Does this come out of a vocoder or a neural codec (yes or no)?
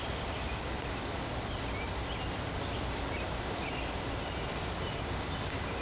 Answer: yes